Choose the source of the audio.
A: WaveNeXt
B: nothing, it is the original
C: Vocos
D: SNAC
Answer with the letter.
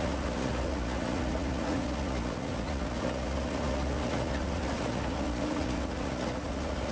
C